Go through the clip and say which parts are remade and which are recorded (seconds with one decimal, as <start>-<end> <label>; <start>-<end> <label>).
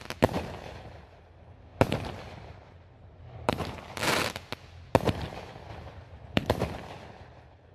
0.0-5.7 recorded; 5.7-6.5 remade; 6.5-7.7 recorded